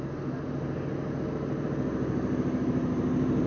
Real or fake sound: real